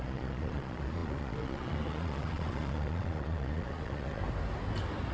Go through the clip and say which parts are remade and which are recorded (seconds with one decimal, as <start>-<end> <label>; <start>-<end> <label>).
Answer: 0.0-4.2 remade; 4.2-5.1 recorded